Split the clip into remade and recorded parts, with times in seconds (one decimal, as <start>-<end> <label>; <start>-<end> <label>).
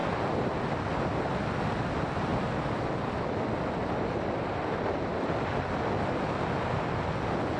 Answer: 0.0-2.3 recorded; 2.3-3.0 remade; 3.0-7.6 recorded